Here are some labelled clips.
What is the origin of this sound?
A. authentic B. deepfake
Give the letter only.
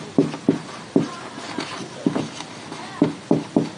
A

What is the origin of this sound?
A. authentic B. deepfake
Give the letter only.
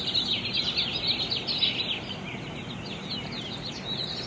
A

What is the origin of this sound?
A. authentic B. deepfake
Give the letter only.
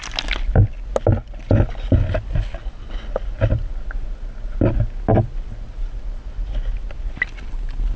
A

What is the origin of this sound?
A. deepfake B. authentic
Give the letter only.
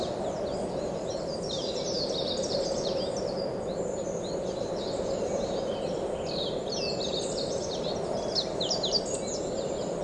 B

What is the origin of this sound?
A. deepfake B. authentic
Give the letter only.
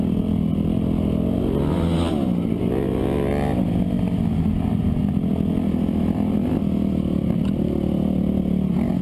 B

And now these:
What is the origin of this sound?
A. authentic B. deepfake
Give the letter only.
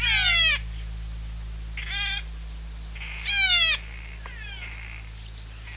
A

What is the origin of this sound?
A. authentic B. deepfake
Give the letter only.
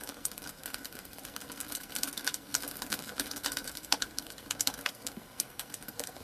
B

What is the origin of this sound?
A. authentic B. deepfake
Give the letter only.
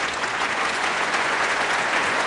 B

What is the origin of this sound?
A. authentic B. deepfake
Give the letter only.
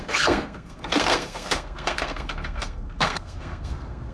B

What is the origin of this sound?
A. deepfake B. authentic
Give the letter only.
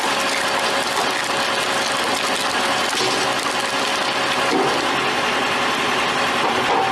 B